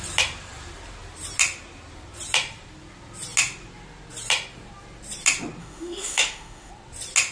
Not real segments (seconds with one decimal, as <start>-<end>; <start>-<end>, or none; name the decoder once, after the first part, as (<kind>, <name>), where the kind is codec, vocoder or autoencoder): 5.6-6.7 (autoencoder, DAC-VAE)